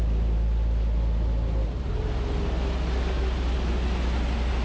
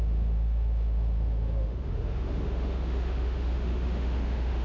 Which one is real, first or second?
first